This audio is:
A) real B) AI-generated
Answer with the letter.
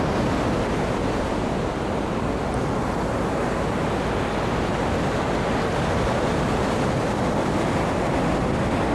A